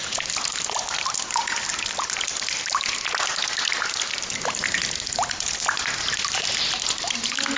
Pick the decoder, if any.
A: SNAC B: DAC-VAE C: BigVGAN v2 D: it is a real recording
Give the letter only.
D